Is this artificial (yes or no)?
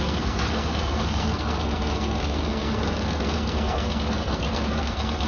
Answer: yes